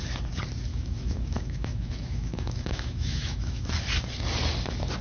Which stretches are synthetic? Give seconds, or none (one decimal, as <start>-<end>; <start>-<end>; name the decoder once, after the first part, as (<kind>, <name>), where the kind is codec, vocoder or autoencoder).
0.7-3.7 (autoencoder, DAC-VAE)